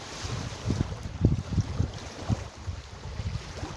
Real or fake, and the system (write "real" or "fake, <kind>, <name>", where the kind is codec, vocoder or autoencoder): fake, vocoder, BigVGAN v2